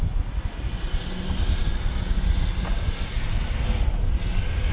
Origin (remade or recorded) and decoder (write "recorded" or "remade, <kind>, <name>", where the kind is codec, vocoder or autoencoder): recorded